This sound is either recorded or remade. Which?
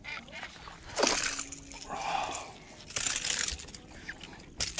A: recorded